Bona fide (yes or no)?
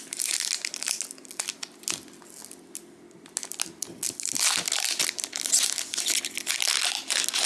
yes